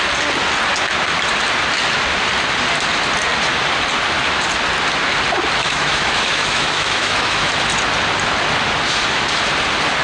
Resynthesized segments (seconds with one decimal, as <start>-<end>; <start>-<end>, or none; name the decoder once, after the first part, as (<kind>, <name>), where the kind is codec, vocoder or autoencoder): 5.6-7.5 (autoencoder, DAC-VAE)